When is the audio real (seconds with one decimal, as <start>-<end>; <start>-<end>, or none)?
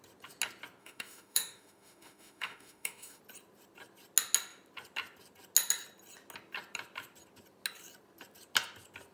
0.0-0.8; 3.2-9.1